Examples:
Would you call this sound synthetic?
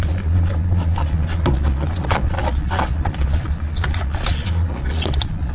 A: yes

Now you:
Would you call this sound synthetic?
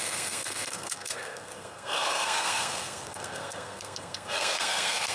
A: yes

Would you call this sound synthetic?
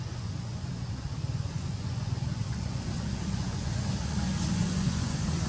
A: yes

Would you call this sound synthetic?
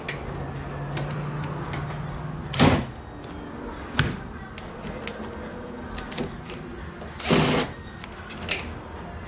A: no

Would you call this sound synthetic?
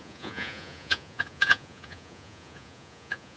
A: yes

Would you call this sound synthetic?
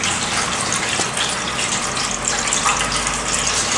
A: no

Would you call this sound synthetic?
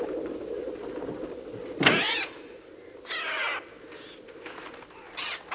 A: no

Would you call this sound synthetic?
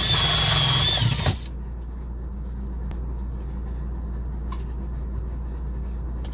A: no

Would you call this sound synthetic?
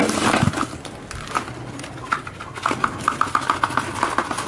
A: no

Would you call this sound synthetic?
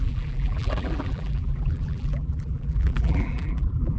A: yes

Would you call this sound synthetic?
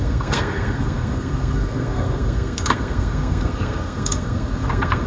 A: yes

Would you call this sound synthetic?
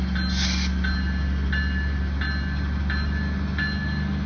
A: no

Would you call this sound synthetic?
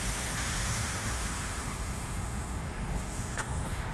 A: yes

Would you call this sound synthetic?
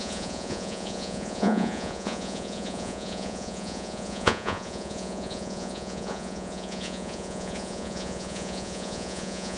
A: yes